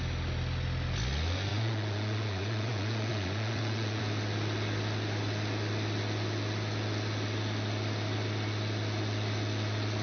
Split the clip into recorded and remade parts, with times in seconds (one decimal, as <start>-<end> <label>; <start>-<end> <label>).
0.0-1.5 recorded; 1.5-4.0 remade; 4.0-10.0 recorded